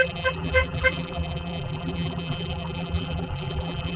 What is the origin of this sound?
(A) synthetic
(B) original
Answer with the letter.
A